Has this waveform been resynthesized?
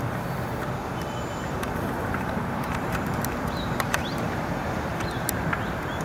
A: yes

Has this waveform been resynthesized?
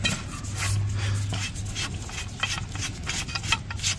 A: no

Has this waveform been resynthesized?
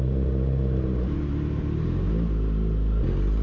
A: no